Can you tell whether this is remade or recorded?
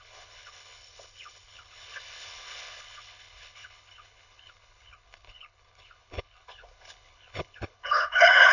remade